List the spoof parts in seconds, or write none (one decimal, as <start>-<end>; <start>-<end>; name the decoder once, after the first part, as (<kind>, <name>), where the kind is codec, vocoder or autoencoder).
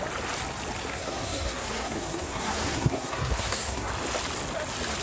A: 0.9-3.9 (codec, SNAC)